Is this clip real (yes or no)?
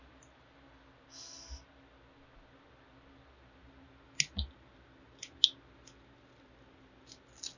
yes